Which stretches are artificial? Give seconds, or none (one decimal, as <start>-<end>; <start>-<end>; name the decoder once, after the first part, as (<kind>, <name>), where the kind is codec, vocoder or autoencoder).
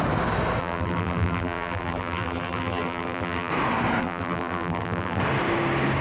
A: 0.6-3.5 (vocoder, BigVGAN v2); 4.0-5.2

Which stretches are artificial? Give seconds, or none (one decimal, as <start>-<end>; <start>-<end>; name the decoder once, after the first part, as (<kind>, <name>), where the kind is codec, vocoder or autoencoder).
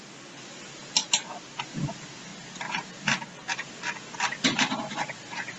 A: 0.0-1.0 (vocoder, BigVGAN v2); 1.6-2.3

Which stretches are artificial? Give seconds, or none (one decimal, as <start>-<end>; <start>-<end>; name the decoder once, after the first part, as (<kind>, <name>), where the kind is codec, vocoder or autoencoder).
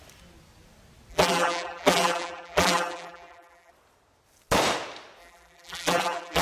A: 1.1-3.7 (vocoder, BigVGAN v2); 5.2-6.4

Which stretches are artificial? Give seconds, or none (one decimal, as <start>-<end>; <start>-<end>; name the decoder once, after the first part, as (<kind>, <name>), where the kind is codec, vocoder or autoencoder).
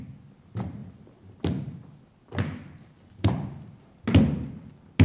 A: 0.8-3.3 (vocoder, BigVGAN v2)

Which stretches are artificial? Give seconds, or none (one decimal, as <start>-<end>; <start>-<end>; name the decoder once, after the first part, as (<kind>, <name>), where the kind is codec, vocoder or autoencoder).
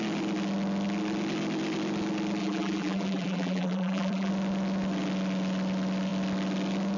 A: 2.4-4.3 (vocoder, BigVGAN v2)